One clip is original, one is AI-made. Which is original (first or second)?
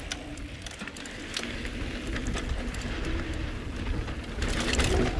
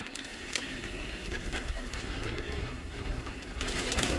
first